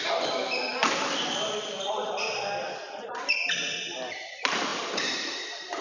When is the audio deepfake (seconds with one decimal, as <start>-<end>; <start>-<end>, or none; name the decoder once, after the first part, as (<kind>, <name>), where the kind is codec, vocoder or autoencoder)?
4.7-5.8 (vocoder, BigVGAN v2)